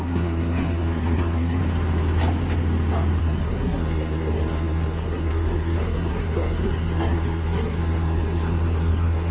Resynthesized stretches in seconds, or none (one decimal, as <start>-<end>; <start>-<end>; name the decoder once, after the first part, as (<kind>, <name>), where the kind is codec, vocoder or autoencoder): 0.0-1.6 (codec, SNAC); 3.2-9.3